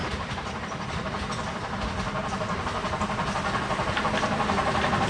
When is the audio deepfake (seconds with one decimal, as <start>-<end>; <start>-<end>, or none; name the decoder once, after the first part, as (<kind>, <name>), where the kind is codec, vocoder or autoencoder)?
0.0-1.3 (vocoder, BigVGAN v2)